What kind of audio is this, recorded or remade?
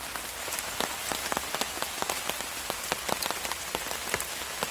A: recorded